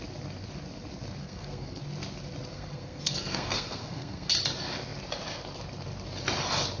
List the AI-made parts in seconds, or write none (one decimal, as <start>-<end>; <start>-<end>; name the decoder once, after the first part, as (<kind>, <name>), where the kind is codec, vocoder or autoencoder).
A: 1.2-1.8 (codec, SNAC); 2.5-4.3